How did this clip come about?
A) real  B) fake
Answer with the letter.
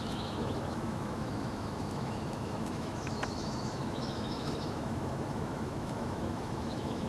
B